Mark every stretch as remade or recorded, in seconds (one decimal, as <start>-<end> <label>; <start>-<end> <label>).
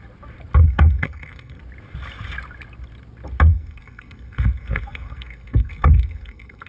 0.0-0.6 recorded; 0.6-1.6 remade; 1.6-3.5 recorded; 3.5-6.7 remade